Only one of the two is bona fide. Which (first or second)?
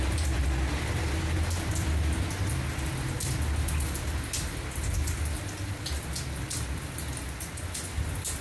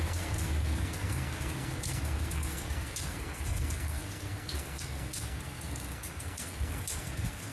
first